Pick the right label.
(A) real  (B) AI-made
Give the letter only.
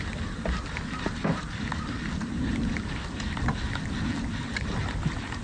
A